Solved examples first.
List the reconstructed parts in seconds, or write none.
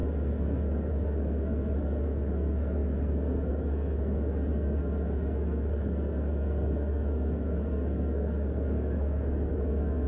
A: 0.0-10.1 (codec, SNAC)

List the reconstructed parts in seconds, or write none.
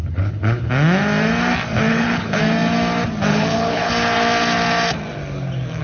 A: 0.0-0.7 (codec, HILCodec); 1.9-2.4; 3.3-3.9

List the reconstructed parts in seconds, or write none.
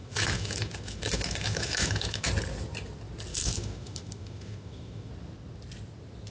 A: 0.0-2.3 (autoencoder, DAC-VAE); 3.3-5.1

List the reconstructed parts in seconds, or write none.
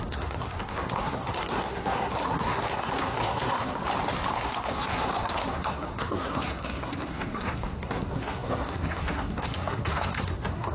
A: 0.0-3.8 (codec, SNAC); 4.4-10.7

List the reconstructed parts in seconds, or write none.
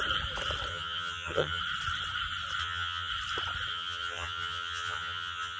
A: 0.7-1.6 (vocoder, HiFi-GAN); 2.6-3.1; 3.7-5.6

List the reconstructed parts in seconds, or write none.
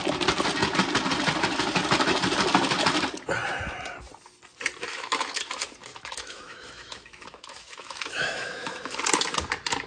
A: 4.9-5.4 (autoencoder, DAC-VAE); 5.9-9.0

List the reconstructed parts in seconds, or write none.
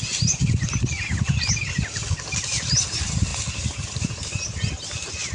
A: none